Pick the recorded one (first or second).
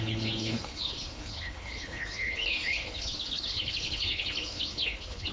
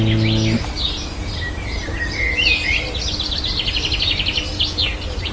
second